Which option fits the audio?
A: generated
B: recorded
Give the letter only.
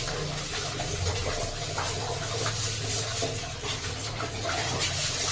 B